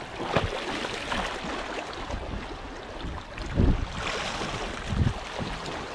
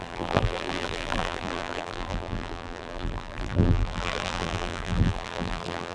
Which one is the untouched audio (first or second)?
first